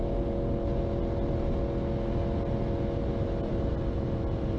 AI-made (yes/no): no